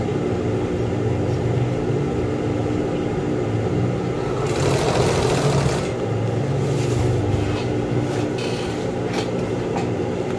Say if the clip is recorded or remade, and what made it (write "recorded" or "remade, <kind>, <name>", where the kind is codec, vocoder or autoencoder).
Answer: recorded